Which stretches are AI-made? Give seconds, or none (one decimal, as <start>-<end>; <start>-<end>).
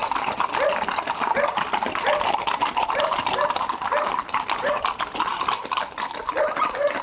none